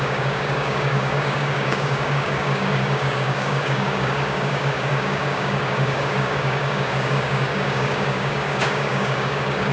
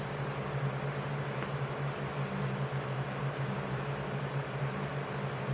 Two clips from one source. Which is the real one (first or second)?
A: second